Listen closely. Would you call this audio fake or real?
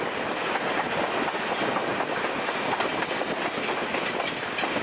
real